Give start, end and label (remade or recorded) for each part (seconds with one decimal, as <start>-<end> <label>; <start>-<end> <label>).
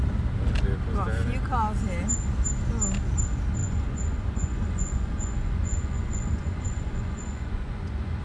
0.0-3.6 recorded; 3.6-8.2 remade